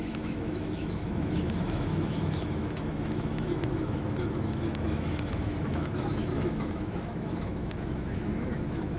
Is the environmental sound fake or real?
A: fake